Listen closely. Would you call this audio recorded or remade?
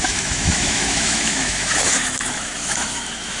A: remade